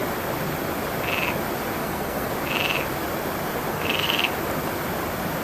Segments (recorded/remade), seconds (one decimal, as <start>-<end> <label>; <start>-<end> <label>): 0.0-1.8 recorded; 1.8-2.3 remade; 2.3-3.7 recorded; 3.7-4.3 remade; 4.3-5.4 recorded